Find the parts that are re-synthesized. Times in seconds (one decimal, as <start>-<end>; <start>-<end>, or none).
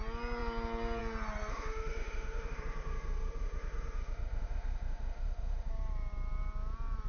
1.5-5.7